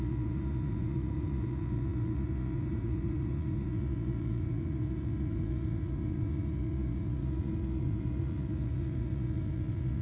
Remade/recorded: remade